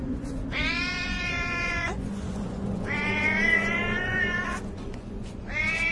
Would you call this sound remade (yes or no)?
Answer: yes